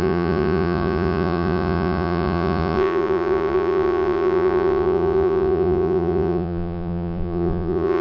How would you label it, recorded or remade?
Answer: remade